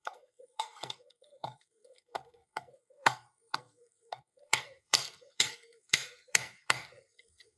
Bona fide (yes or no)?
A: no